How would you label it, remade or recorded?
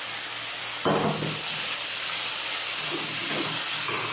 recorded